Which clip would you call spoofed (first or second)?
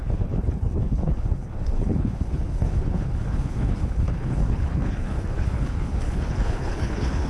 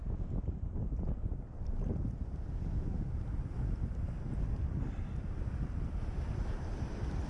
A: first